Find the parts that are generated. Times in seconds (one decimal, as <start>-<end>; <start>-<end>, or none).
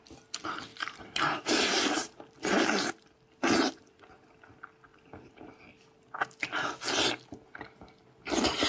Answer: 0.7-2.9